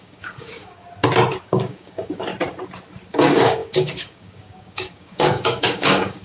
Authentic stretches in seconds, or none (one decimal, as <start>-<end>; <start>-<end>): 0.8-1.3; 2.3-3.1

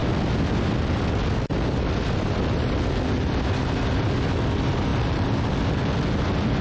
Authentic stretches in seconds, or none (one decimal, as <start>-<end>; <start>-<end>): 0.0-6.6

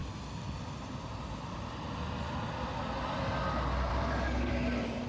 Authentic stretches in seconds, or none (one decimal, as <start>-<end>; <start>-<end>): 0.0-3.9; 4.5-5.1

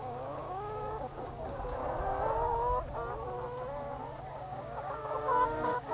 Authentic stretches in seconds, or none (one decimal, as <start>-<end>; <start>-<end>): 1.8-4.3